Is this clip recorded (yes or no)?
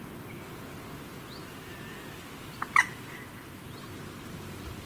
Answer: yes